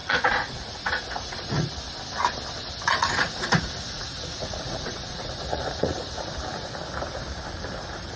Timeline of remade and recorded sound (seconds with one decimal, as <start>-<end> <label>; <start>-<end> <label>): 0.0-1.7 remade; 1.7-2.9 recorded; 2.9-6.1 remade; 6.1-8.2 recorded